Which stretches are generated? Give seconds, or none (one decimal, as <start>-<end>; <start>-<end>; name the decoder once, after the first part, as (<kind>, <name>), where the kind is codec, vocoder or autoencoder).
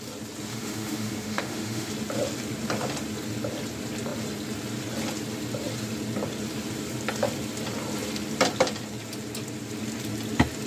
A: 0.5-1.9 (autoencoder, DAC-VAE)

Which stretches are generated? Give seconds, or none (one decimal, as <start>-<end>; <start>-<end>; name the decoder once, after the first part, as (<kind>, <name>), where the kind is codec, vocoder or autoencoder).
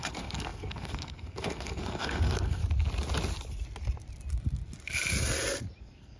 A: 0.0-2.6 (codec, SNAC); 5.8-6.2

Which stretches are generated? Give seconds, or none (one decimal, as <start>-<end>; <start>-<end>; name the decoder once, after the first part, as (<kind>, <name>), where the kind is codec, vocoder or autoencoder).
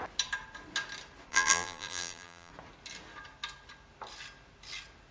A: 1.3-2.5 (vocoder, BigVGAN v2)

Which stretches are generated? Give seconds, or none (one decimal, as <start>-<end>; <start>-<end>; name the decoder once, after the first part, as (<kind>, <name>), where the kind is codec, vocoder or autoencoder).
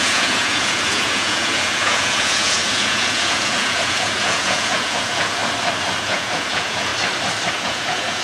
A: 0.0-5.4 (vocoder, Vocos); 6.0-6.9; 7.5-8.2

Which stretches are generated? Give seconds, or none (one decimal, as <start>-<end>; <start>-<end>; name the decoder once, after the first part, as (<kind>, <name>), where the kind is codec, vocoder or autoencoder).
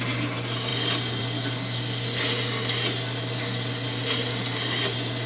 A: none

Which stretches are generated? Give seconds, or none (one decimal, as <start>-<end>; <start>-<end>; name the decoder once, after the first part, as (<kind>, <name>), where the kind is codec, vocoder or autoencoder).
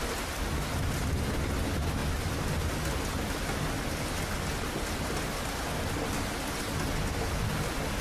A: none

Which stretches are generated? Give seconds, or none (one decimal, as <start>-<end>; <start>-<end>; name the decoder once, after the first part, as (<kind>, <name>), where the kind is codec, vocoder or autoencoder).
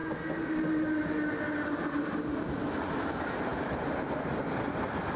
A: none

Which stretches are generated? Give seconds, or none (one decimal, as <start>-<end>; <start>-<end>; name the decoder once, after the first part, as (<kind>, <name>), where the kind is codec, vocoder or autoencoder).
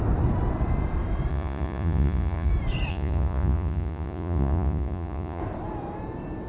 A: 1.3-2.5 (vocoder, Vocos); 2.9-5.4